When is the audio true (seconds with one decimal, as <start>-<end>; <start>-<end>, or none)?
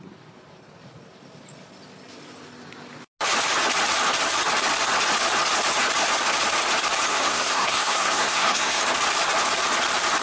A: 0.0-7.1; 8.8-10.2